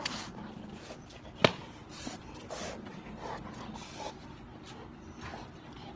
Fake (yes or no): no